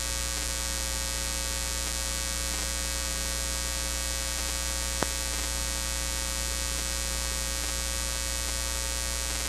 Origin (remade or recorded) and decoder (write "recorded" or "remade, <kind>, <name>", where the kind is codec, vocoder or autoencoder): recorded